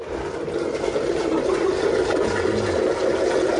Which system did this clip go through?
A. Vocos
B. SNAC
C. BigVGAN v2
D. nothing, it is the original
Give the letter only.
D